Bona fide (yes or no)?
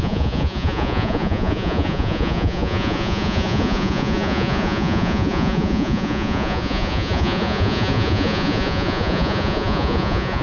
no